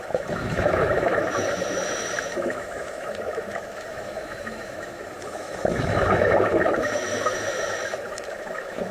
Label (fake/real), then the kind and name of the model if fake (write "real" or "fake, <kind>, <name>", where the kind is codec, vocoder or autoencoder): fake, autoencoder, DAC-VAE